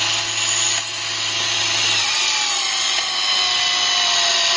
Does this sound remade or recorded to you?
recorded